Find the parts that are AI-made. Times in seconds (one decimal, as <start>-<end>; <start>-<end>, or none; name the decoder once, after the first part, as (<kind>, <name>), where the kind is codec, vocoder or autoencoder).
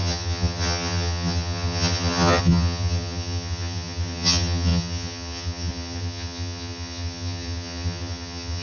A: 0.0-8.6 (vocoder, HiFi-GAN)